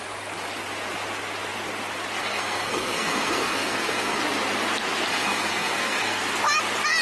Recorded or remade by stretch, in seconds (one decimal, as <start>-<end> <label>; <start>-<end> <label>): 0.0-2.2 recorded; 2.2-4.2 remade; 4.2-5.1 recorded; 5.1-6.2 remade; 6.2-7.0 recorded